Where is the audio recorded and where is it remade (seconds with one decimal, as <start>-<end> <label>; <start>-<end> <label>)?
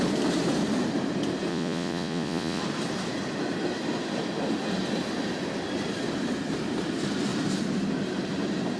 0.0-1.5 recorded; 1.5-2.6 remade; 2.6-8.8 recorded